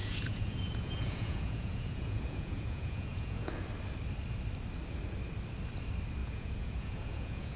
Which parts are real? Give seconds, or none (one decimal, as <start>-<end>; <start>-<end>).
3.5-6.2